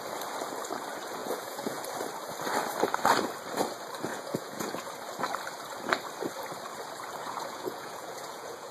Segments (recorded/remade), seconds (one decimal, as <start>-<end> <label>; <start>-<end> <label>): 0.0-1.2 recorded; 1.2-1.8 remade; 1.8-4.1 recorded; 4.1-4.9 remade; 4.9-7.2 recorded; 7.2-8.7 remade